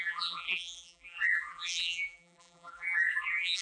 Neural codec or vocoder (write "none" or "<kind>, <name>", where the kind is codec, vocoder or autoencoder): vocoder, BigVGAN v2